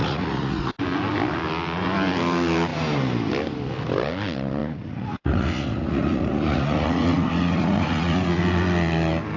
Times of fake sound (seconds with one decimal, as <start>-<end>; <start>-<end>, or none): 0.0-0.8; 4.6-8.4